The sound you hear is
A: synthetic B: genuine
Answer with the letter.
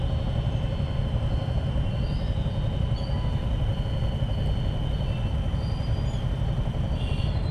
B